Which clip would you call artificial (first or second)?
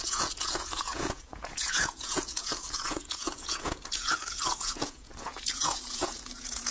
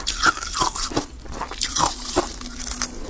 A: first